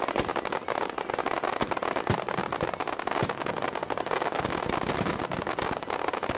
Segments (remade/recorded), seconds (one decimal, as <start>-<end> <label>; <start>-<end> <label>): 0.0-6.4 recorded